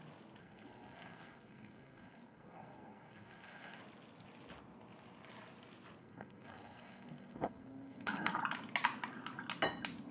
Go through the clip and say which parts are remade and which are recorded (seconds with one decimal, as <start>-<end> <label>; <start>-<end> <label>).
0.0-0.4 recorded; 0.4-3.8 remade; 3.8-6.0 recorded; 6.0-8.3 remade; 8.3-10.1 recorded